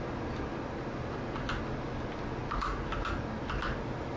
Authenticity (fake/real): real